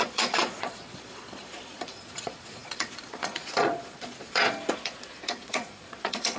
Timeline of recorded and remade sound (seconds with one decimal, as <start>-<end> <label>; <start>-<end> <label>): 0.0-6.4 remade